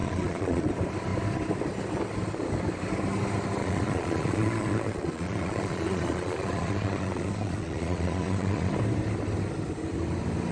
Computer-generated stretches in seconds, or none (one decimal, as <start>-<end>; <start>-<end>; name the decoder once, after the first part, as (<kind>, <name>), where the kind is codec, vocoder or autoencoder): 0.0-0.7 (vocoder, Vocos); 3.6-8.7